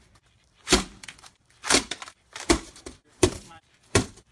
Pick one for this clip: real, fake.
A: fake